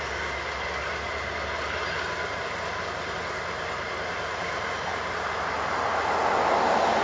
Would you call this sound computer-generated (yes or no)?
no